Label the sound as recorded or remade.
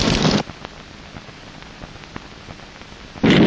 recorded